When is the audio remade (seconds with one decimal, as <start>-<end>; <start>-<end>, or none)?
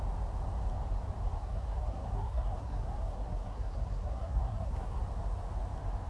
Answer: 1.3-5.0